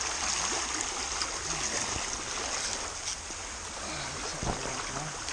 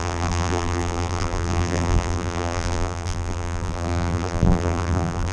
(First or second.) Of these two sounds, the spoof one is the second